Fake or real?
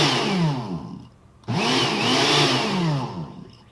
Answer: real